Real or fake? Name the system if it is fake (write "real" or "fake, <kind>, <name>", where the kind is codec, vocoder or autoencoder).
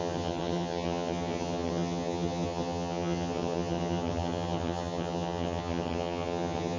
fake, vocoder, HiFi-GAN